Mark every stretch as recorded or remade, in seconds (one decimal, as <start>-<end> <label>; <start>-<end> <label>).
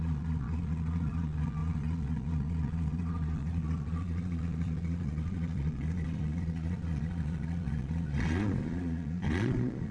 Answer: 0.0-9.9 remade